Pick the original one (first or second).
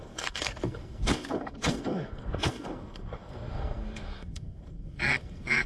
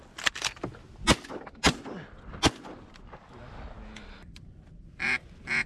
second